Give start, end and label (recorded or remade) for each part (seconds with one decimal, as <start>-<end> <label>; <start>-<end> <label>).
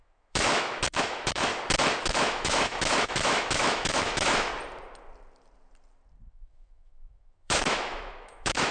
0.0-1.5 remade; 1.5-2.0 recorded; 2.0-4.5 remade; 4.5-6.3 recorded; 6.3-8.7 remade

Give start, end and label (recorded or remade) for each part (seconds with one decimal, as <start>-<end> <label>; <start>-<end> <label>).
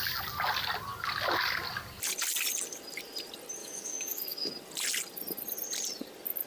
0.0-3.6 recorded; 3.6-4.5 remade; 4.5-6.5 recorded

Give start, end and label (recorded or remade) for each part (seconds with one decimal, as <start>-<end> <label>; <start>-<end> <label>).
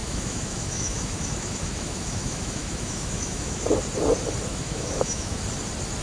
0.0-3.6 remade; 3.6-4.5 recorded; 4.5-5.4 remade; 5.4-6.0 recorded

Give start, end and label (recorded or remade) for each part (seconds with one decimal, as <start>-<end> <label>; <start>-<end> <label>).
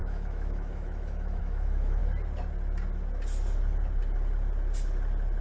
0.0-2.0 remade; 2.0-5.4 recorded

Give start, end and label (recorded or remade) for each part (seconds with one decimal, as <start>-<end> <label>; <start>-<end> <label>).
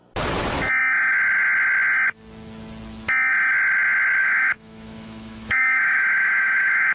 0.0-4.2 recorded; 4.2-6.9 remade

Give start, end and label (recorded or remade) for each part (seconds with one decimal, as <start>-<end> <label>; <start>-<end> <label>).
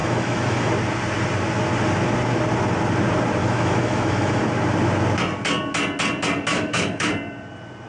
0.0-0.7 remade; 0.7-3.4 recorded; 3.4-4.4 remade; 4.4-6.5 recorded; 6.5-7.1 remade; 7.1-7.9 recorded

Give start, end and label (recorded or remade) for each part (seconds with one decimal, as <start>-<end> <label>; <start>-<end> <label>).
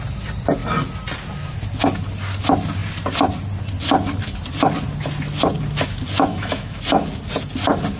0.0-6.3 recorded; 6.3-6.8 remade; 6.8-8.0 recorded